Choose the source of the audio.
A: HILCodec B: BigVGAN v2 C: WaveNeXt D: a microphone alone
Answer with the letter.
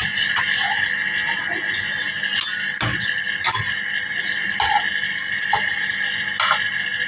D